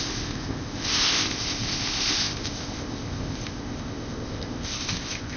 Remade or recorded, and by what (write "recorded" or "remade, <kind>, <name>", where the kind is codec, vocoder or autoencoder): remade, codec, ZipCodec